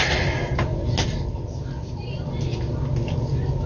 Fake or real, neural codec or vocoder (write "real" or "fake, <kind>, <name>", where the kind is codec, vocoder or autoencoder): real